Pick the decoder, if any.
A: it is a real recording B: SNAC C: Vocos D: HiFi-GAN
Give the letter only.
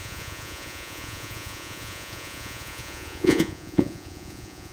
C